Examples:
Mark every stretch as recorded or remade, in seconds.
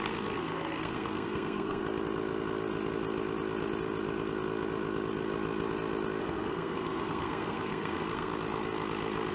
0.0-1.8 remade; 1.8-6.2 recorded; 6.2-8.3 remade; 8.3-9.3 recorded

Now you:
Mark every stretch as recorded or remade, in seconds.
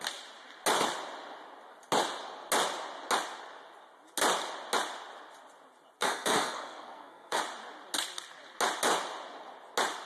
0.0-6.0 recorded; 6.0-7.4 remade; 7.4-10.1 recorded